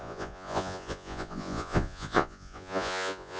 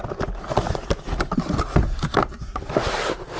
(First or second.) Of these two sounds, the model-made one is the first